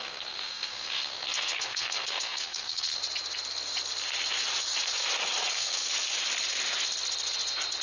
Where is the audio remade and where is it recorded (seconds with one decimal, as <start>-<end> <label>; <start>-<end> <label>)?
0.0-3.0 remade; 3.0-5.5 recorded; 5.5-5.9 remade; 5.9-7.8 recorded